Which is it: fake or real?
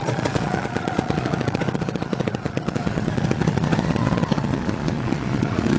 fake